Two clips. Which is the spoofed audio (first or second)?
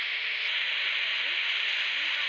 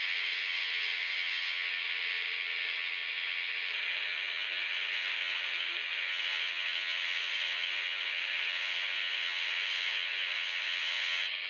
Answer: second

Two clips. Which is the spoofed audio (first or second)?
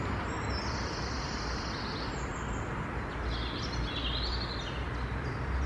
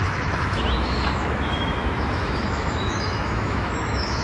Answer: second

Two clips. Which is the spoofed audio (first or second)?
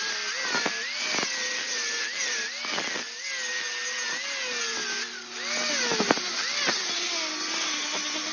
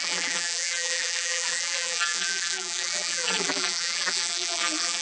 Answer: second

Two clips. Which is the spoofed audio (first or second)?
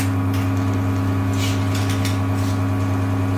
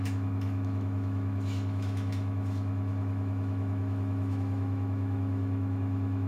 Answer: second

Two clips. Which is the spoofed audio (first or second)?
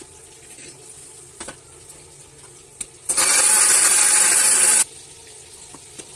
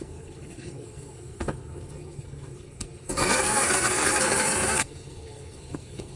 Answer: second